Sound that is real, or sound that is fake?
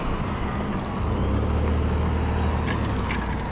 real